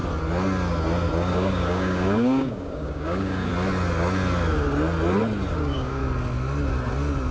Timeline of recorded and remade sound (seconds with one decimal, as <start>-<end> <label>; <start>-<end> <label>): 0.0-1.3 recorded; 1.3-3.5 remade; 3.5-5.5 recorded; 5.5-6.0 remade; 6.0-7.3 recorded